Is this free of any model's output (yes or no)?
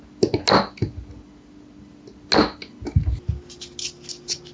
yes